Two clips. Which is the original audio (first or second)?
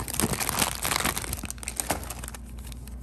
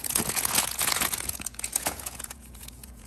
first